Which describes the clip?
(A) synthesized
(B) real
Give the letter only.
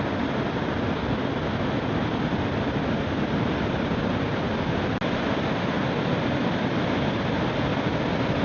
B